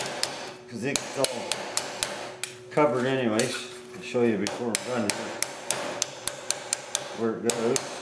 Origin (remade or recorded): recorded